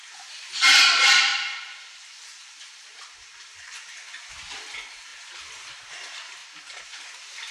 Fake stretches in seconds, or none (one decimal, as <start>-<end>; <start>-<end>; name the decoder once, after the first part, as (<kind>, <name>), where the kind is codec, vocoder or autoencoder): 1.3-4.3 (vocoder, BigVGAN v2); 6.4-7.5